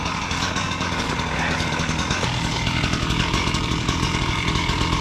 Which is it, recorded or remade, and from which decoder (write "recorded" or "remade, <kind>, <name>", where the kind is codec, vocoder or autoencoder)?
remade, codec, DAC